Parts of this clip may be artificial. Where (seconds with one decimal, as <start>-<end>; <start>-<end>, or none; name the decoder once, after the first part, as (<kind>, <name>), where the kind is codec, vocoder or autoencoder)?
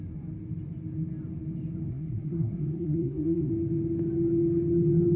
1.9-3.5 (codec, SNAC)